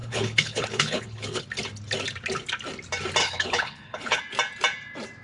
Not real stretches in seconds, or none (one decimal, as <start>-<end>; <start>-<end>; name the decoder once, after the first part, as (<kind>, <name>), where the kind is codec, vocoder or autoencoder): 0.0-1.4 (codec, HILCodec); 3.2-4.2